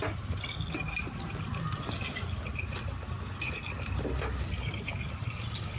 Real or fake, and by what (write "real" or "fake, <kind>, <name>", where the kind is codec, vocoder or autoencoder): real